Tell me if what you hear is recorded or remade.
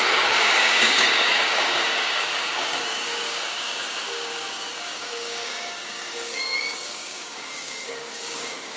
remade